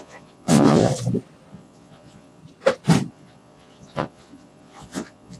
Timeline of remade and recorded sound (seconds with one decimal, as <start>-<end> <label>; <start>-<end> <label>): 0.0-0.9 remade; 0.9-1.5 recorded; 1.5-2.4 remade; 2.4-3.1 recorded; 3.1-5.4 remade